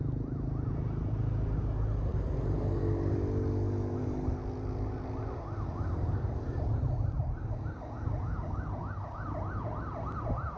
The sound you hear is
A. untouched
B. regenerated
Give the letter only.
A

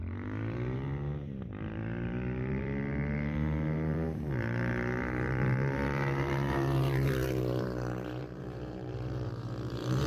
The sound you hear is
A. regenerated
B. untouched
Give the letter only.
A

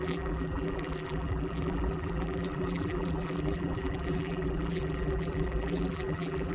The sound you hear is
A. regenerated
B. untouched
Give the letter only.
A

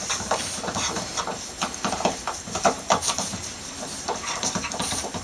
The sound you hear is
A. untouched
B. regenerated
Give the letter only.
B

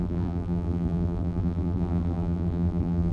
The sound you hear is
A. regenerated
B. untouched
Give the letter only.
A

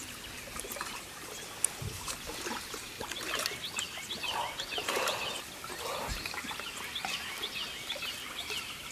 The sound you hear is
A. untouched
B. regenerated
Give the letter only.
A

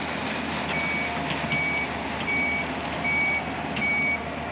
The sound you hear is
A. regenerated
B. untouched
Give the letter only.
B